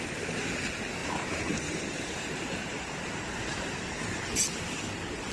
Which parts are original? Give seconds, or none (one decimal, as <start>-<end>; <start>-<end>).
0.0-1.0; 4.2-5.3